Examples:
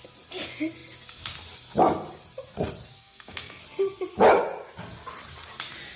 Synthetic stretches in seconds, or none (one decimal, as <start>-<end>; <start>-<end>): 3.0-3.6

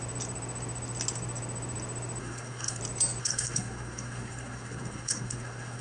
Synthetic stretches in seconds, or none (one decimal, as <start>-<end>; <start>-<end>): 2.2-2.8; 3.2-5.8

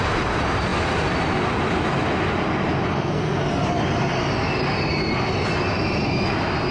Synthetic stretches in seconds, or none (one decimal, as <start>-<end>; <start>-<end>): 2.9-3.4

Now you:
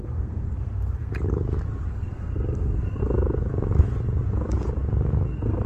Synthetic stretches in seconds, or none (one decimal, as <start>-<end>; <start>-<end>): 0.0-1.1; 1.9-3.0; 5.3-5.7